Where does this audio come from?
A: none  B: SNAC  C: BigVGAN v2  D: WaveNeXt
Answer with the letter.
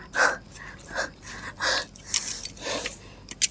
A